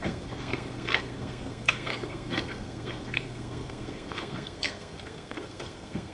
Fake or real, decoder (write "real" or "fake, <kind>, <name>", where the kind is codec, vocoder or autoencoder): fake, codec, SNAC